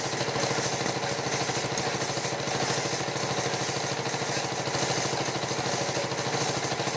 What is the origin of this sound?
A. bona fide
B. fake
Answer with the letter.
A